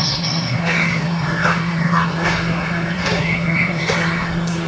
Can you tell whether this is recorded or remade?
remade